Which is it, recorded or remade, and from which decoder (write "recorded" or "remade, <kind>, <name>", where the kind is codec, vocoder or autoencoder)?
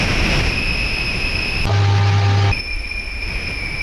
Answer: recorded